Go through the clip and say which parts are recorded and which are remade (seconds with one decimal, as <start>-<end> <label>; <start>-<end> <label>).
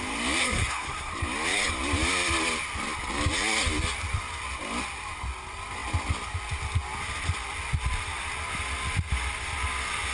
0.0-0.4 recorded; 0.4-1.1 remade; 1.1-10.1 recorded